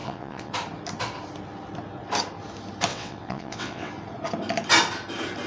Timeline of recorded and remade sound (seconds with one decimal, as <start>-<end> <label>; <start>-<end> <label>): 0.0-0.5 remade; 0.5-2.9 recorded; 2.9-3.9 remade; 3.9-5.5 recorded